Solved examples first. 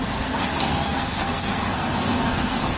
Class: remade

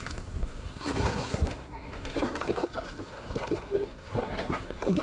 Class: remade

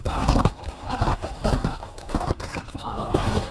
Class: remade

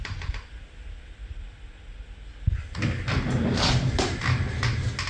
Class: recorded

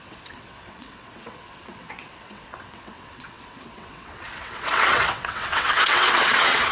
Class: remade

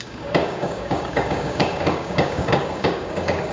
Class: remade